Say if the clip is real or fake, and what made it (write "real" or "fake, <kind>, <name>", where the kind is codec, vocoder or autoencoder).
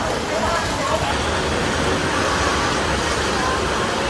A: fake, vocoder, BigVGAN v2